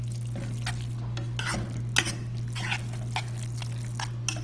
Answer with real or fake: real